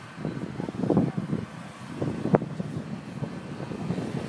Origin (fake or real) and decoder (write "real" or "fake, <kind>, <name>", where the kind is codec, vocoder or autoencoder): real